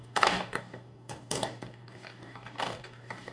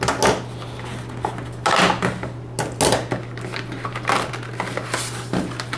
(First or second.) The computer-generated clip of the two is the first